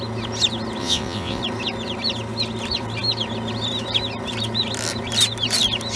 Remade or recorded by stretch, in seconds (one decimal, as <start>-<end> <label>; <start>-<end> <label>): 0.0-0.8 recorded; 0.8-1.4 remade; 1.4-6.0 recorded